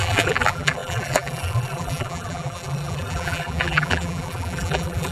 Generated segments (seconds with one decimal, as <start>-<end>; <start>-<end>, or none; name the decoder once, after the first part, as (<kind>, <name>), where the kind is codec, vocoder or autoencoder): 0.0-5.1 (vocoder, BigVGAN v2)